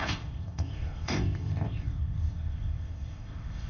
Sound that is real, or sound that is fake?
fake